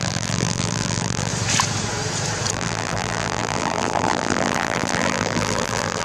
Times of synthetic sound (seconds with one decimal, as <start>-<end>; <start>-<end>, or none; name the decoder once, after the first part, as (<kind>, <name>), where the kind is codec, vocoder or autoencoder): 0.0-1.3 (vocoder, BigVGAN v2); 2.5-6.0